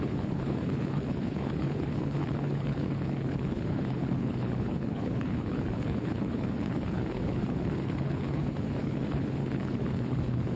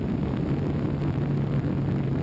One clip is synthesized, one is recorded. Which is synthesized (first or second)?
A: first